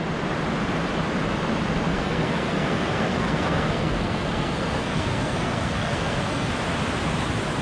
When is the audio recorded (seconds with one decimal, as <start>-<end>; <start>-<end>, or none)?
0.0-1.9; 6.5-7.6